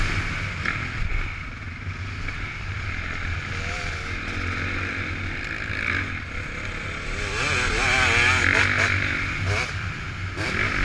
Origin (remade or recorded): recorded